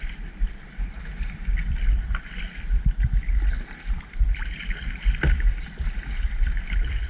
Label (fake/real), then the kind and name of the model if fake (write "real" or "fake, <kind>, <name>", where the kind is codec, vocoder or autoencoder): real